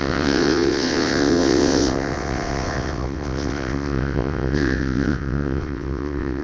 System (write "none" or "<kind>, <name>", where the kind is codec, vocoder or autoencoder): vocoder, WaveNeXt